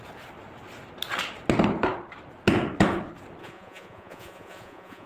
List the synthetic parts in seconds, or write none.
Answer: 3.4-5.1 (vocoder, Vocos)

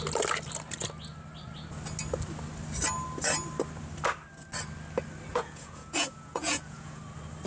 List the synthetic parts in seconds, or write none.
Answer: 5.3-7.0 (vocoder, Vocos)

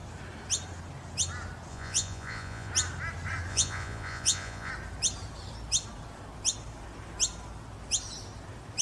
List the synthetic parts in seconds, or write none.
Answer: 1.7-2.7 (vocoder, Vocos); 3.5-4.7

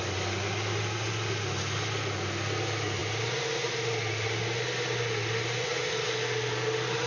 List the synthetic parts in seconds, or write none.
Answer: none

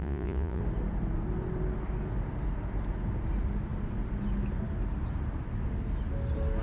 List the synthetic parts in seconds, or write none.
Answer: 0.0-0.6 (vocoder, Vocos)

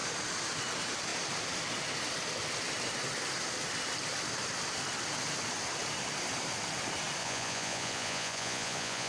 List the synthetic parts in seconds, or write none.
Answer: 7.2-9.1 (vocoder, Vocos)

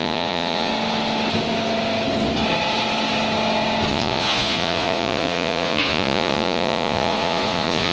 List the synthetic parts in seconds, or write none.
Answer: 0.0-0.7 (vocoder, Vocos); 3.9-7.9